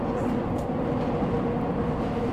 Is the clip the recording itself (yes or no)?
yes